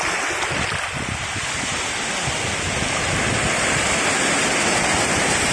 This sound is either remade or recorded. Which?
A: recorded